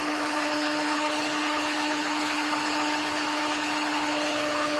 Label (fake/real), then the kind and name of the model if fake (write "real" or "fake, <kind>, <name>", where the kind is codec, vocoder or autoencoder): fake, codec, HILCodec